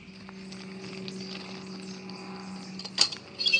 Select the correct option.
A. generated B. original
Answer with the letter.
B